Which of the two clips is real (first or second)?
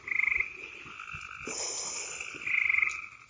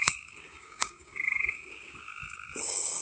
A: first